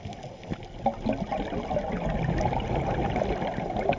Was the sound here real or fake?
real